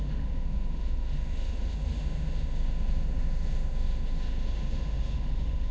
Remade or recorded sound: remade